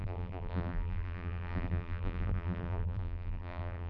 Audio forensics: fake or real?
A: fake